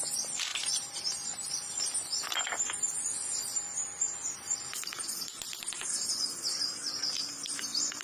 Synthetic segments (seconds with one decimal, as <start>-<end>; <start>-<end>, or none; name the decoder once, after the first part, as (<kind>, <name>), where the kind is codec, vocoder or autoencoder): 0.5-1.8 (vocoder, BigVGAN v2); 3.8-8.0